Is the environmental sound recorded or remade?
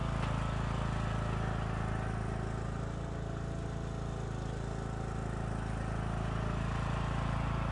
recorded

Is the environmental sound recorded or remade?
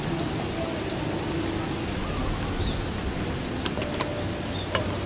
recorded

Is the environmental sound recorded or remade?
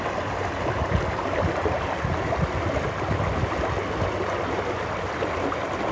recorded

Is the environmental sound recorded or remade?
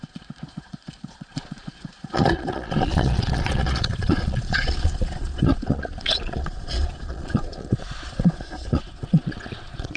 remade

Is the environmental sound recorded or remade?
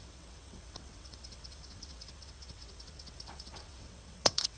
remade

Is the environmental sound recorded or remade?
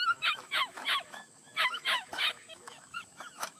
remade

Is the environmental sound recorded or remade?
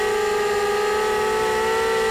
recorded